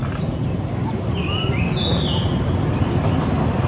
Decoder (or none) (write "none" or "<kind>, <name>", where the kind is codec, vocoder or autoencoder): none